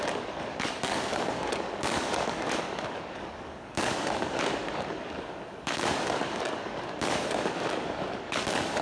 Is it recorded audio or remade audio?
remade